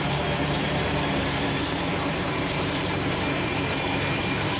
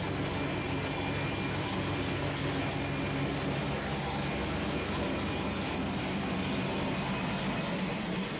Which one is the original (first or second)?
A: second